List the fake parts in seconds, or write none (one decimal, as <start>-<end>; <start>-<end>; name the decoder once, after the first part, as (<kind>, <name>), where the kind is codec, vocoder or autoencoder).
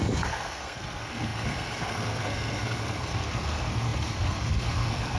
0.0-5.2 (codec, SNAC)